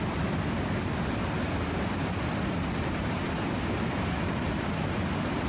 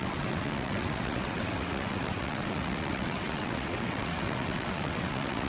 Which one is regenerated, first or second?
second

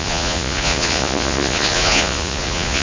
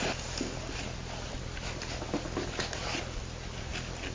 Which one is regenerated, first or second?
first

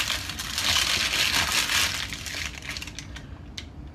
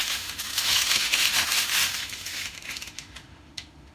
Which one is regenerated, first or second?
second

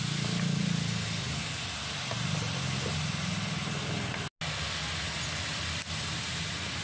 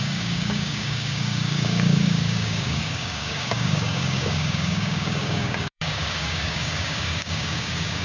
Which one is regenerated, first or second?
second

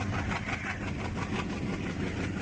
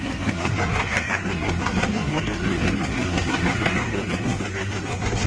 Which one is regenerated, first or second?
second